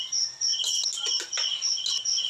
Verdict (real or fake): real